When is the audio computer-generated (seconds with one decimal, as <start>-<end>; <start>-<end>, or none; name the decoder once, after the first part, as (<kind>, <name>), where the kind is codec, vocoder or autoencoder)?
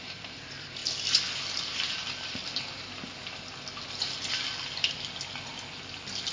0.0-0.8 (vocoder, BigVGAN v2); 1.8-2.4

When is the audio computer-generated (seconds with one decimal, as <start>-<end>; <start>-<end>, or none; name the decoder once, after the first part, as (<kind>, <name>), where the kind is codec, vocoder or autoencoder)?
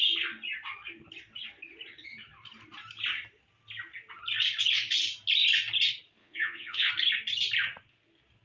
6.2-6.9 (vocoder, Vocos)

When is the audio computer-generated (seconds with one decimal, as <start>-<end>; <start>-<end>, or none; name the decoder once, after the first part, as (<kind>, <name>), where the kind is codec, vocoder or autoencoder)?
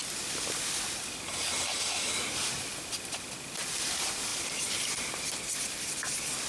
4.3-5.3 (vocoder, BigVGAN v2)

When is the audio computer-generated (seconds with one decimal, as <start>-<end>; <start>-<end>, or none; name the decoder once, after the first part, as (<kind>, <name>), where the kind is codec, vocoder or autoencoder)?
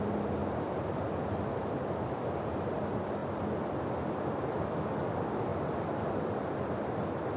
0.0-0.4 (vocoder, BigVGAN v2); 2.3-5.5; 6.1-7.4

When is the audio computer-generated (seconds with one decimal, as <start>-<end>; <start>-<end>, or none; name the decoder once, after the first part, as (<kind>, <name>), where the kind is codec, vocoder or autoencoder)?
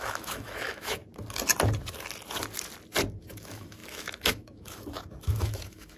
0.0-1.0 (autoencoder, DAC-VAE); 3.2-6.0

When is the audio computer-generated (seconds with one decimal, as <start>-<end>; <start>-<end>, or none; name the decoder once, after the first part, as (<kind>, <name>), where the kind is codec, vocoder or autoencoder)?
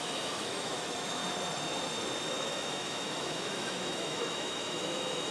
0.0-1.2 (autoencoder, DAC-VAE); 2.3-5.3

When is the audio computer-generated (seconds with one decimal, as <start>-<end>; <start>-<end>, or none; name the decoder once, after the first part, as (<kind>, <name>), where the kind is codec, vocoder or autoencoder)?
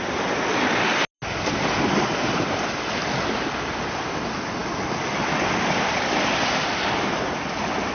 none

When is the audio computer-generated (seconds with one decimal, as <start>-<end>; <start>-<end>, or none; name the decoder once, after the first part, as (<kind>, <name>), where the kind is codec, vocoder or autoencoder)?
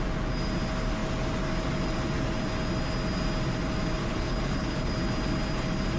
4.0-4.9 (codec, HILCodec)